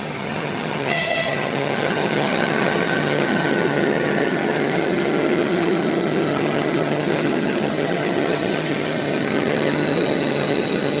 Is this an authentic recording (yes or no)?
no